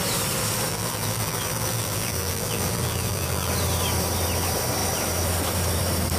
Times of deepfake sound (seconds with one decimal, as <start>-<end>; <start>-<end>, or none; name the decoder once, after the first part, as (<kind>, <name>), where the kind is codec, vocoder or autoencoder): 0.7-3.5 (vocoder, BigVGAN v2)